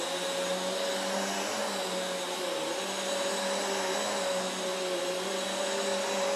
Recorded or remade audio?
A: recorded